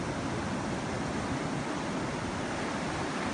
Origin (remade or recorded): recorded